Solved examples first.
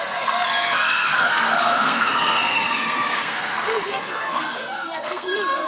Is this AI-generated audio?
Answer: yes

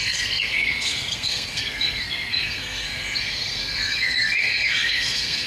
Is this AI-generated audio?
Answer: yes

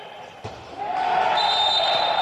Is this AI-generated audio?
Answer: no